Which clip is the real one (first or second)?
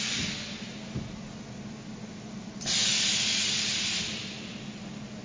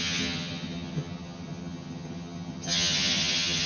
first